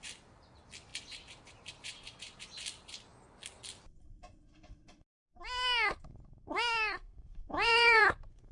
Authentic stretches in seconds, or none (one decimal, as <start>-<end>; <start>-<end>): 3.1-7.2